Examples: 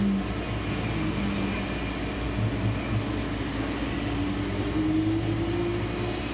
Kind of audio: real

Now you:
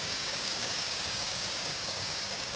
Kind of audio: fake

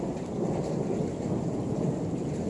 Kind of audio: real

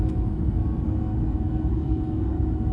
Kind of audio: fake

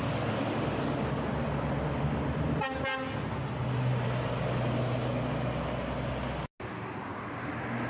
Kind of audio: real